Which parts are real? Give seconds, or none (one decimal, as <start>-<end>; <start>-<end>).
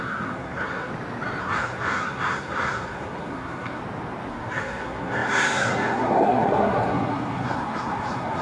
0.9-1.4; 3.8-4.3